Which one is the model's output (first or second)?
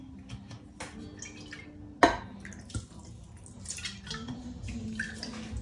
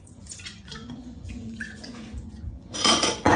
second